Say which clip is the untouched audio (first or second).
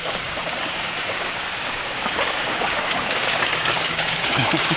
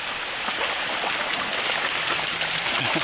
second